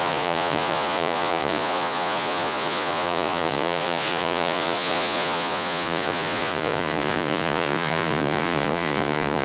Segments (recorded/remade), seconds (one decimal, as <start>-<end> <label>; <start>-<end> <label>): 0.0-9.4 remade